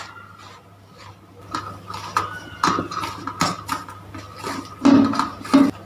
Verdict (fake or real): real